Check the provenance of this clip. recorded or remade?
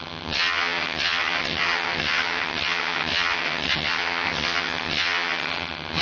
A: remade